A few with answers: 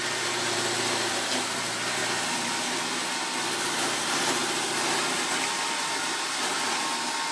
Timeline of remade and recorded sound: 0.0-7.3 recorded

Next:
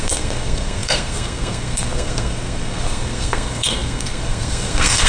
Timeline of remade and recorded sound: 0.0-5.1 remade

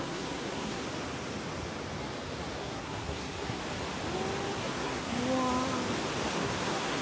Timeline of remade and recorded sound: 0.0-0.8 remade; 0.8-2.6 recorded; 2.6-3.6 remade; 3.6-4.6 recorded; 4.6-5.2 remade; 5.2-6.3 recorded; 6.3-7.0 remade

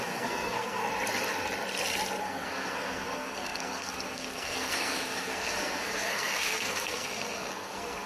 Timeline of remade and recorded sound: 0.0-0.8 remade; 0.8-2.2 recorded; 2.2-8.1 remade

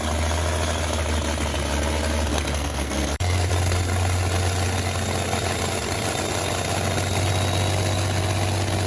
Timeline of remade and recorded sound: 0.0-2.3 recorded; 2.3-3.5 remade; 3.5-8.9 recorded

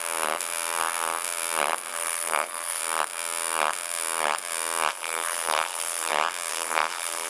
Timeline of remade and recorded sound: 0.0-1.9 recorded; 1.9-2.8 remade; 2.8-4.9 recorded; 4.9-6.1 remade; 6.1-6.5 recorded; 6.5-7.3 remade